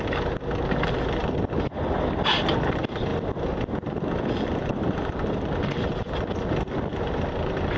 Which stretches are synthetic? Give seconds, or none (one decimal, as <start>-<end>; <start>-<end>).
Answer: none